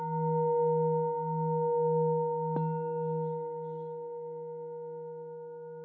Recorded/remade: recorded